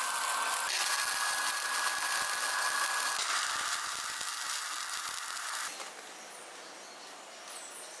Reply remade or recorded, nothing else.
recorded